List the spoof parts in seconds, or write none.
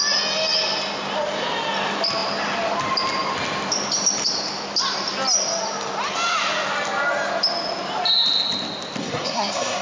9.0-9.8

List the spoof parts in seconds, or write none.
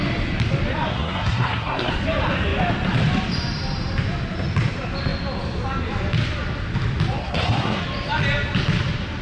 0.9-1.9; 7.2-7.8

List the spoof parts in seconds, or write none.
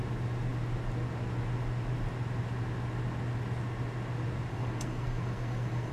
4.5-5.9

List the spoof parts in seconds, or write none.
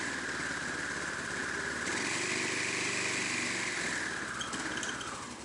none